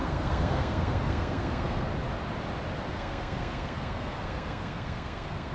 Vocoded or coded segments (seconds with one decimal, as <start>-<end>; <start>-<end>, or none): 0.0-1.9; 2.9-5.5